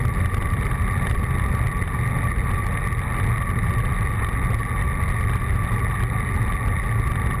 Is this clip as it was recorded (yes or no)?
yes